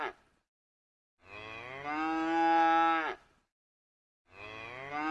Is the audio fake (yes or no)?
no